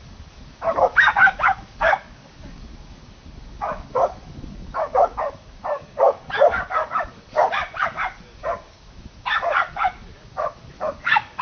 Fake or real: fake